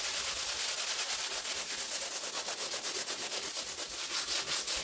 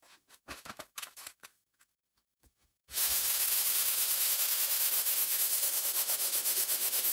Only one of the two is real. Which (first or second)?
first